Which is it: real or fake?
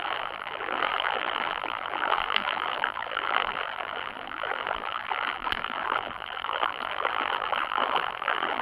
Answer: fake